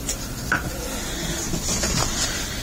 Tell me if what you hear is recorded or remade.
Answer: recorded